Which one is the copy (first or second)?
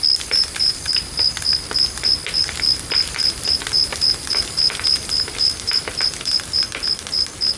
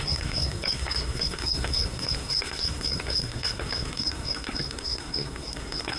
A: second